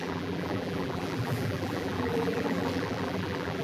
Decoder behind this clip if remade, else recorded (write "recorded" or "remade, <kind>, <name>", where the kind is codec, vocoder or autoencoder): remade, vocoder, BigVGAN v2